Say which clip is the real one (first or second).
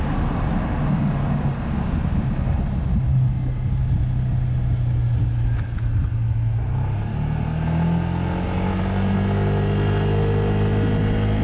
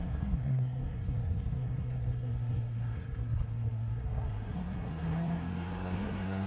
first